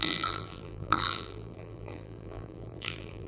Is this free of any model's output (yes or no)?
no